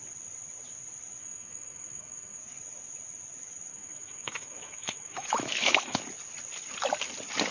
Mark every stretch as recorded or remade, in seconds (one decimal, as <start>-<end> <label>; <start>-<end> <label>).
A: 0.0-1.2 recorded; 1.2-2.4 remade; 2.4-3.7 recorded; 3.7-6.0 remade; 6.0-7.5 recorded